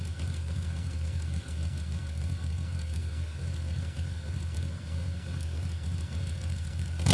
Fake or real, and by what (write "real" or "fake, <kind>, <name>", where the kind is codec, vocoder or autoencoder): fake, codec, SNAC